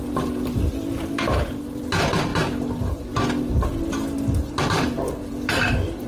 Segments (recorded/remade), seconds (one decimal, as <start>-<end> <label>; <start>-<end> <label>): 0.0-2.3 remade; 2.3-4.6 recorded; 4.6-6.1 remade